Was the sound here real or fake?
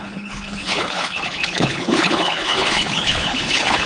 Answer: fake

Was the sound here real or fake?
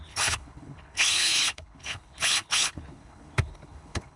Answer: fake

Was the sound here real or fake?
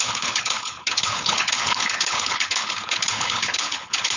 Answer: fake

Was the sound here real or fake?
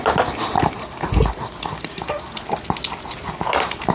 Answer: real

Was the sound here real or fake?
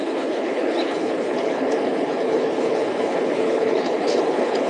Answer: fake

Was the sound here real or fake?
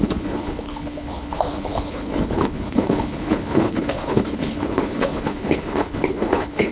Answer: fake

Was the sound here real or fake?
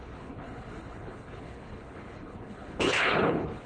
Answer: fake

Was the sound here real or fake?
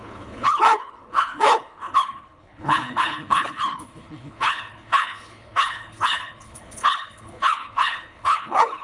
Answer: fake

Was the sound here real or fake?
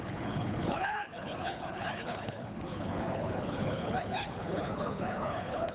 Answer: fake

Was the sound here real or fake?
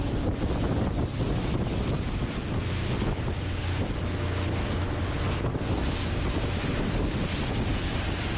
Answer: real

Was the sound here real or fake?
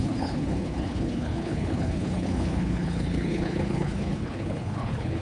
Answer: fake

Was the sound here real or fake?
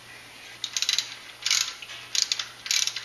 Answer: real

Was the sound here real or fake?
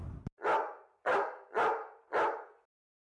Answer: real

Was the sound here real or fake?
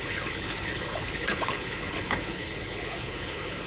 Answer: fake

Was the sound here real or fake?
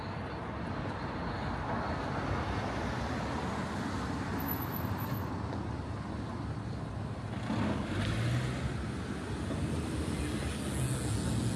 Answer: real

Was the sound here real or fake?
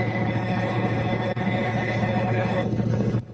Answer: fake